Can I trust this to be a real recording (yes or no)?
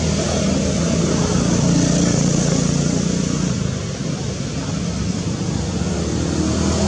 yes